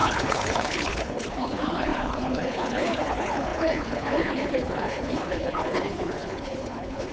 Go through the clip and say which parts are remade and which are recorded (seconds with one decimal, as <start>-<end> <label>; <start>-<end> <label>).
0.0-7.1 remade